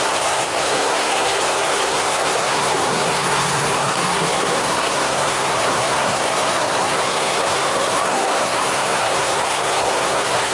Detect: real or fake fake